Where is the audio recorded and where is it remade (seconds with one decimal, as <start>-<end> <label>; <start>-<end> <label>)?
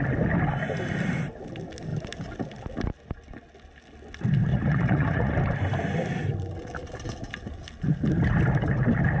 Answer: 0.0-4.5 recorded; 4.5-5.3 remade; 5.3-9.2 recorded